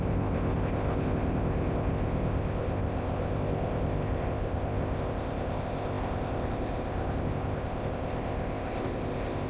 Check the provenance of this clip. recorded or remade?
remade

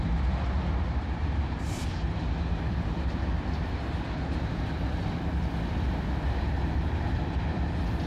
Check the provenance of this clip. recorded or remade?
remade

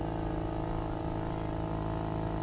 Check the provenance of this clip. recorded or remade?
recorded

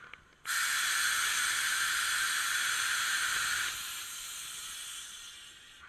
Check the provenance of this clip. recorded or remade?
recorded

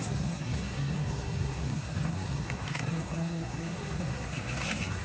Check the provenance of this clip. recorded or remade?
remade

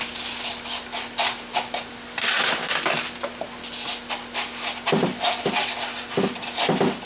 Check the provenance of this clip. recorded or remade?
recorded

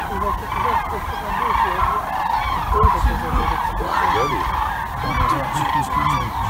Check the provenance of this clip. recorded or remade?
recorded